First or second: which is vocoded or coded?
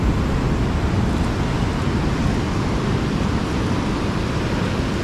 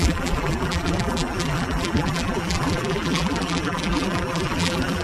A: second